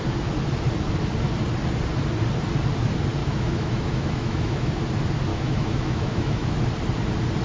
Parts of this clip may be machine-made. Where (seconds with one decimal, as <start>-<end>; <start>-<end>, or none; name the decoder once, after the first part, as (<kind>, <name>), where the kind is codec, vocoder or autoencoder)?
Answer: 3.2-4.8 (autoencoder, DAC-VAE); 5.3-6.6